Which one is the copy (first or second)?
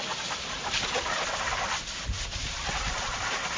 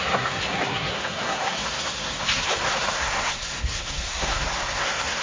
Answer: second